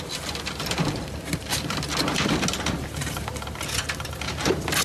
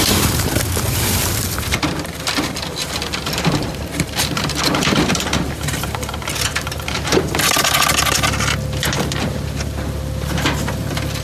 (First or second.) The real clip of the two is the first